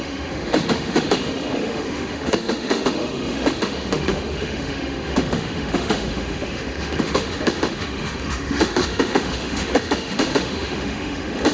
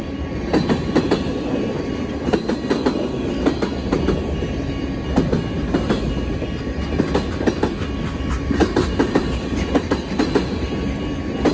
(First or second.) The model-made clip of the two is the first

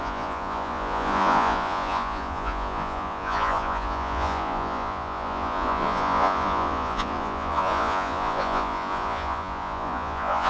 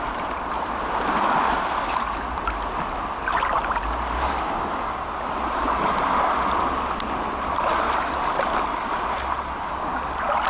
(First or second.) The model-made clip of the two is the first